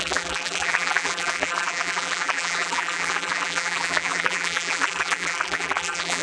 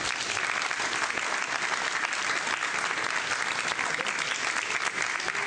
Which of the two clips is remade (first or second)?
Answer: first